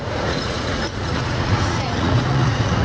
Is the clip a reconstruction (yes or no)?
yes